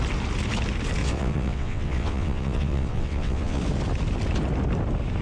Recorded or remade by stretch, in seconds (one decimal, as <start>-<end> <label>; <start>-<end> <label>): 0.0-1.0 recorded; 1.0-3.6 remade; 3.6-5.2 recorded